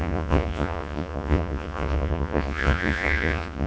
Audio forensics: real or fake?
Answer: fake